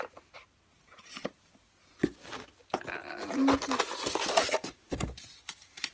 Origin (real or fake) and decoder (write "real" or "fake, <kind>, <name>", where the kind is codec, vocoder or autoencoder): real